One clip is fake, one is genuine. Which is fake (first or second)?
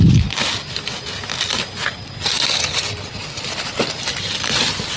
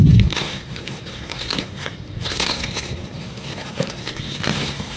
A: second